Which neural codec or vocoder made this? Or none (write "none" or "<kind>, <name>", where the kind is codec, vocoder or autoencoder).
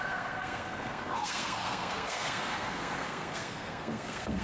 codec, SNAC